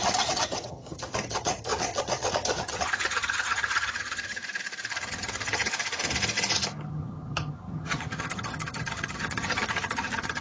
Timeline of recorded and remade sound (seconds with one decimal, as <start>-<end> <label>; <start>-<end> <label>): 0.0-4.4 remade; 4.4-5.1 recorded; 5.1-5.7 remade; 5.7-6.9 recorded; 6.9-10.4 remade